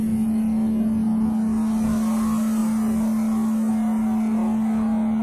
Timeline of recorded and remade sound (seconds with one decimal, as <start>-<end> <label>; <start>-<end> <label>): 0.0-5.2 recorded